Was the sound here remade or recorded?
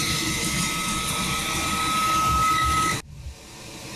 recorded